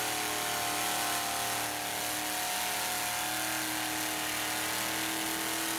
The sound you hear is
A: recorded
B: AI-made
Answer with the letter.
A